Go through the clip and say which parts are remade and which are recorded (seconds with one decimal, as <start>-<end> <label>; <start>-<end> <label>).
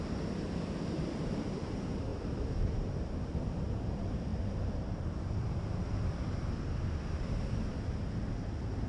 0.0-2.1 recorded; 2.1-3.3 remade; 3.3-8.9 recorded